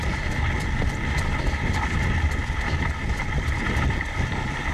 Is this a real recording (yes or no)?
yes